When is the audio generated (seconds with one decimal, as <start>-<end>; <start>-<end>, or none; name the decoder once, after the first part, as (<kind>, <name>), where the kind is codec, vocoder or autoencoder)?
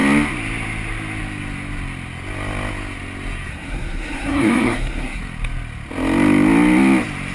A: 3.5-5.2 (codec, SNAC)